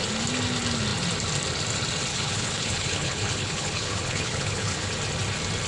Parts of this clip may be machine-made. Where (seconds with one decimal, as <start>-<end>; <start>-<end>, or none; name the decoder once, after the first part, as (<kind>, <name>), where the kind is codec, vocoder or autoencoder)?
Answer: 2.1-4.9 (codec, HILCodec)